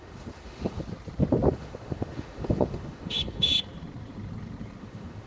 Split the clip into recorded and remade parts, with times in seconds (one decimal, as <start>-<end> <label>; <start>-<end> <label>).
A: 0.0-0.8 remade; 0.8-1.5 recorded; 1.5-3.5 remade; 3.5-4.8 recorded; 4.8-5.3 remade